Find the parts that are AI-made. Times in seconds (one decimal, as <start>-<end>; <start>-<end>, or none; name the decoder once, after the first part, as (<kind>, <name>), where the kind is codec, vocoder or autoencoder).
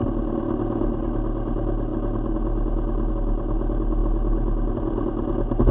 none